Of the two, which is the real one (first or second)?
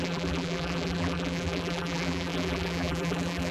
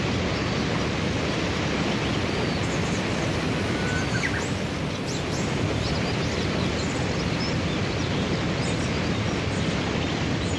second